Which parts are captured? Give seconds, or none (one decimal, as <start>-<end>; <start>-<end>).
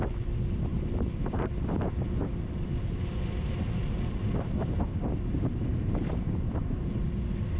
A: 0.0-0.7; 1.5-2.7; 6.9-7.6